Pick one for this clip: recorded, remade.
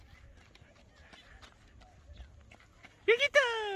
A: recorded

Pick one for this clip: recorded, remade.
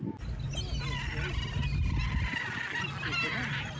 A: recorded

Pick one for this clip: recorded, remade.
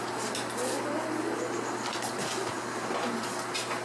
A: recorded